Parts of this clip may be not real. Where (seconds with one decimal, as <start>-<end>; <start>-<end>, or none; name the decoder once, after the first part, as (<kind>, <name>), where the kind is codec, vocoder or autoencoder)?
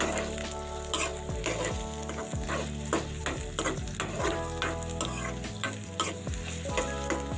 none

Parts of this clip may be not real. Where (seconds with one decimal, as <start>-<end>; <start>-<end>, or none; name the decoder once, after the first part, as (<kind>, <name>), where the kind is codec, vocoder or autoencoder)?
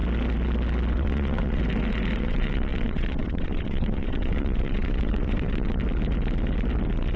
0.9-1.6 (vocoder, WaveNeXt); 2.2-5.8